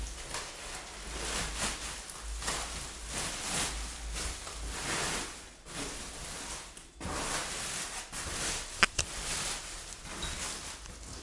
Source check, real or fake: real